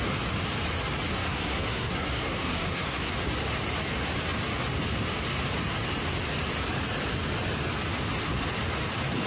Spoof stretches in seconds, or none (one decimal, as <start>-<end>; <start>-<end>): 1.1-3.1